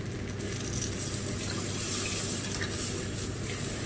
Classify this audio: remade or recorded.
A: recorded